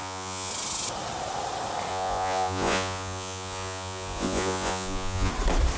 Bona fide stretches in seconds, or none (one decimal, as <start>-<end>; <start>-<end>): 0.5-1.9; 5.3-5.8